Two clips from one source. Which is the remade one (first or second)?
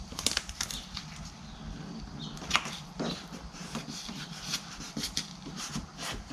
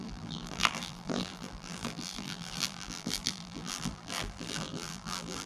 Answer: second